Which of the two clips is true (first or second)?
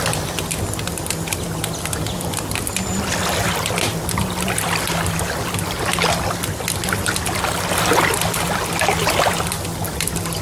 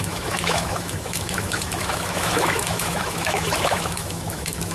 first